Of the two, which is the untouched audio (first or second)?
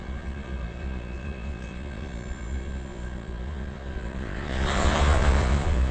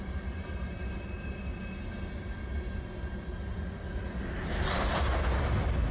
second